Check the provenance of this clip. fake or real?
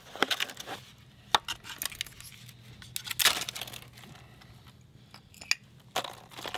real